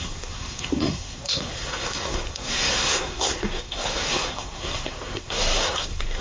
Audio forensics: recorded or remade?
remade